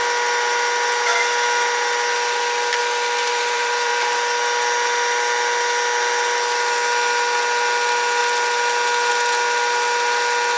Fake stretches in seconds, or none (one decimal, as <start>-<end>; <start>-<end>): 3.3-3.9